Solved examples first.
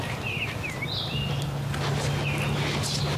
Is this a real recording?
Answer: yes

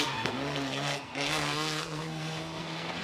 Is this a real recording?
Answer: no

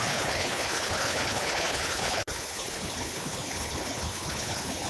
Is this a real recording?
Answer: no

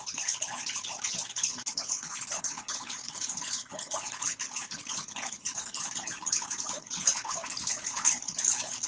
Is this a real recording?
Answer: no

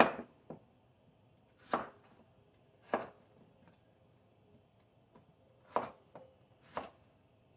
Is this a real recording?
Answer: yes